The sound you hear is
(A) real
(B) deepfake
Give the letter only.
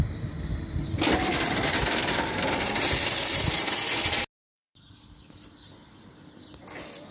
A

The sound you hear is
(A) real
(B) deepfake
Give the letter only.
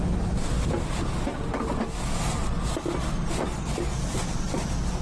A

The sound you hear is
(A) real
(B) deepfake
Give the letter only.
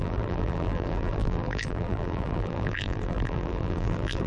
B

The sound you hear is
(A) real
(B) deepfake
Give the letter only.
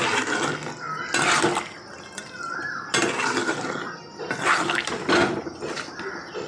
A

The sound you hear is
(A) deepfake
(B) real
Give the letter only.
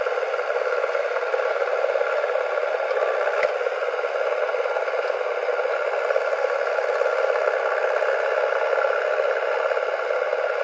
B